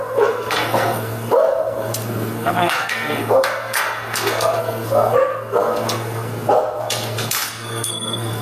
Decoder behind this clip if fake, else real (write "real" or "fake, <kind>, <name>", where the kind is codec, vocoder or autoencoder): fake, codec, SNAC